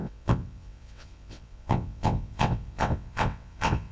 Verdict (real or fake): fake